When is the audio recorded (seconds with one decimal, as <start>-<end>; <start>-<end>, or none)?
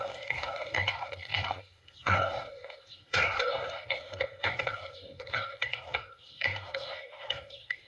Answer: none